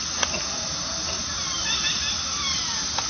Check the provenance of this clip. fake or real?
real